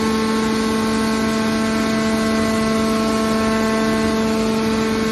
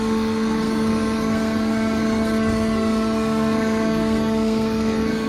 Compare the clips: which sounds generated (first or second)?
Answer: second